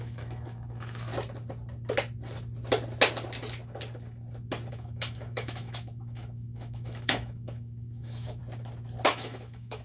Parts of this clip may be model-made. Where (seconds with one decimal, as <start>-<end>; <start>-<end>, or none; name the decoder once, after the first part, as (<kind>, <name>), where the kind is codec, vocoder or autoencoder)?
0.0-1.1 (autoencoder, DAC-VAE); 4.7-8.4; 9.1-9.8